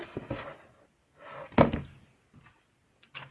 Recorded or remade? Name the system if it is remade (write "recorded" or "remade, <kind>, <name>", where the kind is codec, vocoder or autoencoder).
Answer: recorded